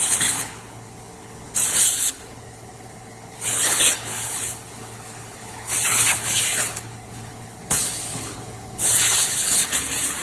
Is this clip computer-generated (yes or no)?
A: yes